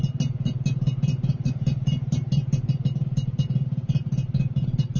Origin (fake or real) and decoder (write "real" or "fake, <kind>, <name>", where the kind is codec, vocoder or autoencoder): real